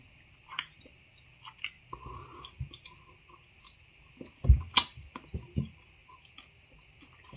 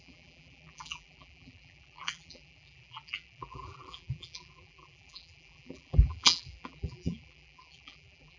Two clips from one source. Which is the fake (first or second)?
second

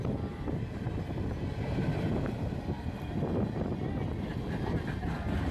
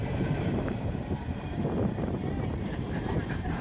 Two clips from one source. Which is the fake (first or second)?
second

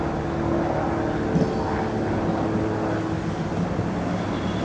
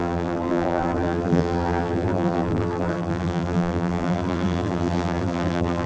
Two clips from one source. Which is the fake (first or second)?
second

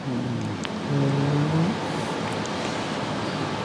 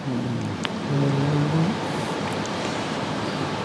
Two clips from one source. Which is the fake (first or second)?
second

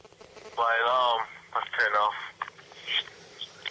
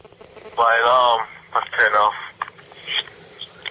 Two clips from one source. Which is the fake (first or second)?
second